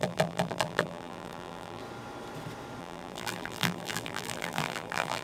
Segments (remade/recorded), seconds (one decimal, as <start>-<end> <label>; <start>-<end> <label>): 0.0-1.8 remade; 1.8-2.8 recorded; 2.8-5.2 remade